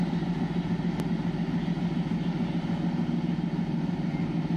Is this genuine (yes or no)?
yes